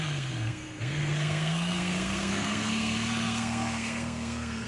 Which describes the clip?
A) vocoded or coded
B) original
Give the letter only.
A